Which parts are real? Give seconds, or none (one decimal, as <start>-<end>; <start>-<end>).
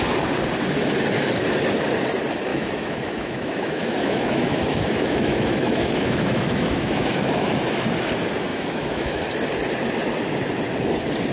0.0-2.5; 7.5-8.5; 9.2-11.3